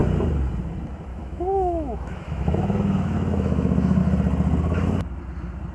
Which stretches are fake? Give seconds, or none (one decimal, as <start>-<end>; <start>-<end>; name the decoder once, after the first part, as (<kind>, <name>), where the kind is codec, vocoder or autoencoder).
1.1-4.0 (autoencoder, DAC-VAE)